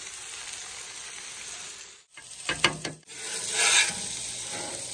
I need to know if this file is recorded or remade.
recorded